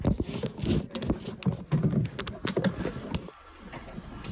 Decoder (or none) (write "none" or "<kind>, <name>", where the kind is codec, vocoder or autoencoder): none